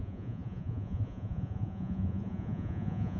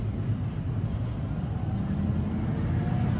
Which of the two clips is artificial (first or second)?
first